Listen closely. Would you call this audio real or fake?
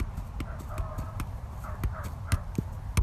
real